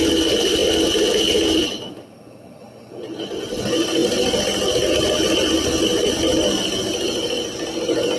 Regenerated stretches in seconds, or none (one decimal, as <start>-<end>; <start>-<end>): none